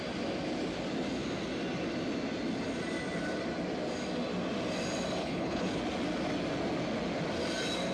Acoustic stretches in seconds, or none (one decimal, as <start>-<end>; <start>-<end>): 0.0-5.2; 5.8-7.9